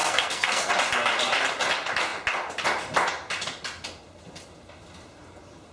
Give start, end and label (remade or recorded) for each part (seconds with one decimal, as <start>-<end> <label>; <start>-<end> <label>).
0.0-0.7 remade; 0.7-5.7 recorded